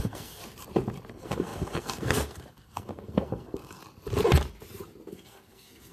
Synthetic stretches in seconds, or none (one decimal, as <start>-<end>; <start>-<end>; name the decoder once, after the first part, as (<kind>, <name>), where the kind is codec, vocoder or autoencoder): 0.0-0.4 (codec, SNAC); 1.1-3.8; 5.1-5.9